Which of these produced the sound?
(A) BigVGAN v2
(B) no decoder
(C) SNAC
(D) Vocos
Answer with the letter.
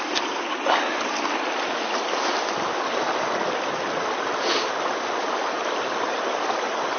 B